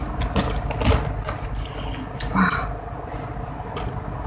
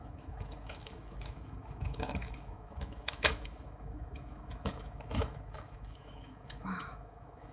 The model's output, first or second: second